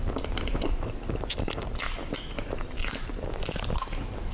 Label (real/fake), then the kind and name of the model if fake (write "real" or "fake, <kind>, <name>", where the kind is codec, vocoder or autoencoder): fake, vocoder, BigVGAN v2